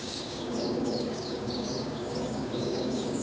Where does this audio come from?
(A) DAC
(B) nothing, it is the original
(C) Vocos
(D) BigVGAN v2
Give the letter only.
A